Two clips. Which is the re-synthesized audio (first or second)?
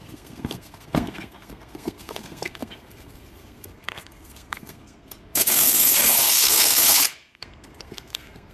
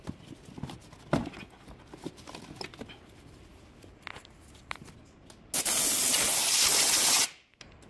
first